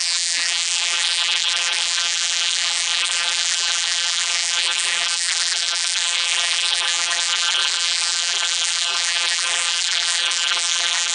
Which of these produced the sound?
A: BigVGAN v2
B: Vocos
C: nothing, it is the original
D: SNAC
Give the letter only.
A